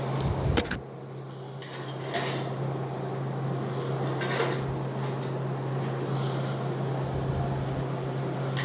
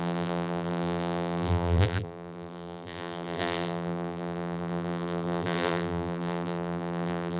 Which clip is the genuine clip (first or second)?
first